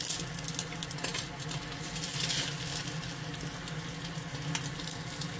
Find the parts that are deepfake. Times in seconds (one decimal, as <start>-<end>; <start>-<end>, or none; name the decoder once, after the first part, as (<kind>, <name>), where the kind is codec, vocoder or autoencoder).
none